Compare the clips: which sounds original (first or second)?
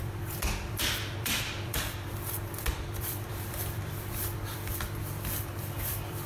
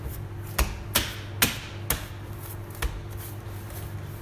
second